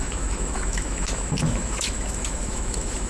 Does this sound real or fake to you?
fake